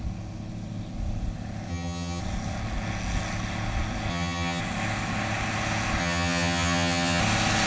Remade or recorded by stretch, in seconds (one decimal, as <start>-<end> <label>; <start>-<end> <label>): 0.0-1.7 recorded; 1.7-2.2 remade; 2.2-4.1 recorded; 4.1-4.6 remade; 4.6-6.0 recorded; 6.0-7.2 remade; 7.2-7.7 recorded